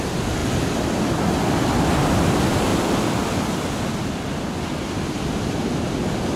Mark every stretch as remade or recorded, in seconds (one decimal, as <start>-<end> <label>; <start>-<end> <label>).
0.0-6.4 recorded